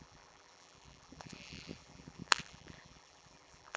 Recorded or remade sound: remade